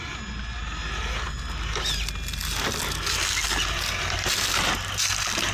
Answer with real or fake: real